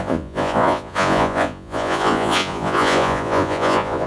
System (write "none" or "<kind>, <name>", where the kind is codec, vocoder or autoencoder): vocoder, Vocos